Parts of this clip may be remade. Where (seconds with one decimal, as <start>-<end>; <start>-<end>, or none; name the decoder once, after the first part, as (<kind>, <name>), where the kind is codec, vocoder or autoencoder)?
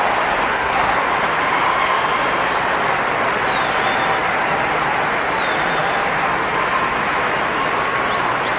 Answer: 0.5-1.0 (codec, SNAC)